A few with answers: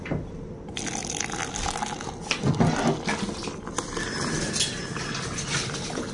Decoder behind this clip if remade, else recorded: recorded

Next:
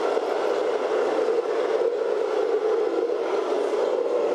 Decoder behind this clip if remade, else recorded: recorded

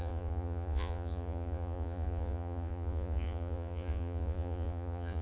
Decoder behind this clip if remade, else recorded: remade, vocoder, Vocos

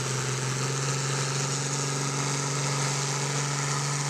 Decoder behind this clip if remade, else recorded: recorded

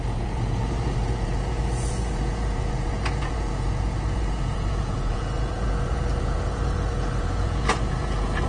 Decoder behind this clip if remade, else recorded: remade, vocoder, Vocos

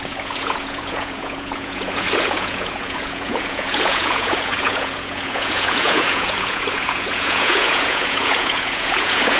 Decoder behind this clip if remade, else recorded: remade, vocoder, Vocos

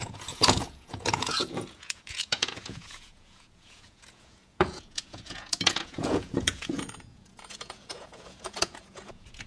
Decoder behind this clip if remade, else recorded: remade, vocoder, Vocos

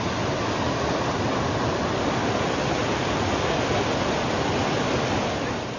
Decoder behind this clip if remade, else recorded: recorded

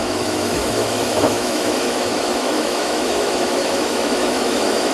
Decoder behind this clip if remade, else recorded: remade, autoencoder, DAC-VAE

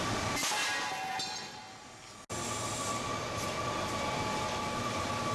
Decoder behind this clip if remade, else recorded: recorded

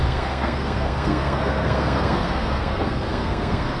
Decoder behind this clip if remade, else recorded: remade, codec, SNAC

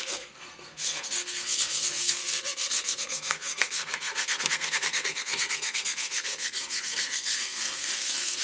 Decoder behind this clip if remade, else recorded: remade, codec, SNAC